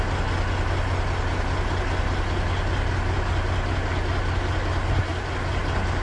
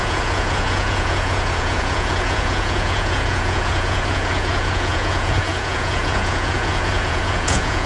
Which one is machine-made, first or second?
second